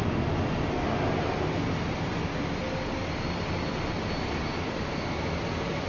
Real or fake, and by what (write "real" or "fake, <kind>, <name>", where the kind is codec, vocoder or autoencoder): real